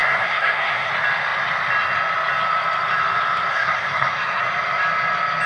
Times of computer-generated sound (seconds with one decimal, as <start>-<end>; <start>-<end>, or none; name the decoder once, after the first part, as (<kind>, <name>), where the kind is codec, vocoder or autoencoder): 0.0-0.9 (codec, SNAC); 3.5-4.4

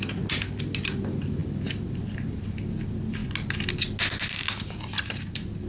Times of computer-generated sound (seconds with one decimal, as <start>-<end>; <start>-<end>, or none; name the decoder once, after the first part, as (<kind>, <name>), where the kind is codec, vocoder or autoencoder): none

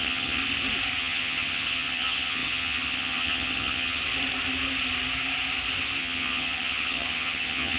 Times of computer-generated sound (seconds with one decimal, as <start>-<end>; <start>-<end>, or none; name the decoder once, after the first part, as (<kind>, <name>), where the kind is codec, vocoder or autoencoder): 0.0-0.4 (vocoder, HiFi-GAN); 1.0-4.0; 6.0-7.8